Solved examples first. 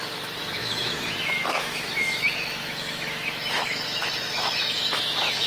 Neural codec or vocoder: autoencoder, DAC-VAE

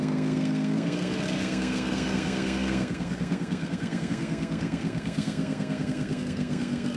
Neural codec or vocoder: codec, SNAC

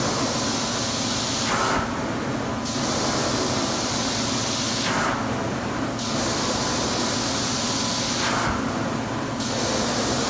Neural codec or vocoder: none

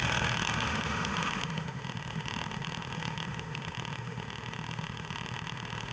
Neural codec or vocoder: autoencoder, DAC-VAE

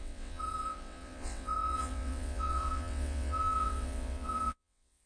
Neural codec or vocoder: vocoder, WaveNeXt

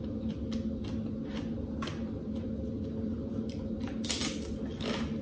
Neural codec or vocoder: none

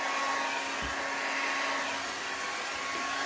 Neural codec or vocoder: none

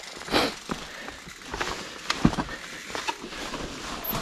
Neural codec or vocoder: none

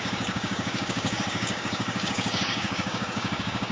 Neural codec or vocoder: codec, DAC